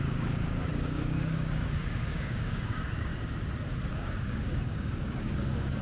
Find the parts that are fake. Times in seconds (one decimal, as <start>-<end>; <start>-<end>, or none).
0.0-3.1; 3.9-5.8